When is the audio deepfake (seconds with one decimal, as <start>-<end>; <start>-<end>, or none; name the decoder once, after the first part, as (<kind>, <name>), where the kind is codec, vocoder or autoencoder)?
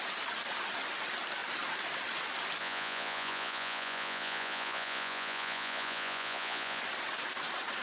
2.6-6.8 (vocoder, Vocos)